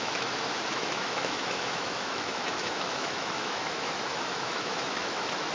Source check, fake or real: fake